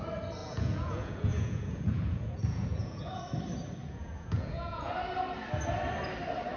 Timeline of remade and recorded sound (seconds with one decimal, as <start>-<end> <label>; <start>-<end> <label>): 0.0-0.4 recorded; 0.4-3.2 remade; 3.2-3.8 recorded; 3.8-4.9 remade; 4.9-6.6 recorded